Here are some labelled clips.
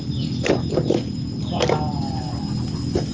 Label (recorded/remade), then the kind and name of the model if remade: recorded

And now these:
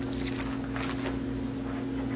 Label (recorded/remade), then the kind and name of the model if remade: recorded